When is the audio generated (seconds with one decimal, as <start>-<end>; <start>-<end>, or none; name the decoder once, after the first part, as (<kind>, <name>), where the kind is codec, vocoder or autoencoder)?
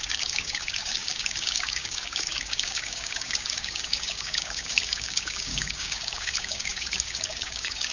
0.0-7.9 (codec, DAC)